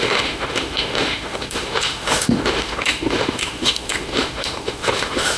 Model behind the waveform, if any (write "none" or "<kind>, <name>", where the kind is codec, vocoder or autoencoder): autoencoder, DAC-VAE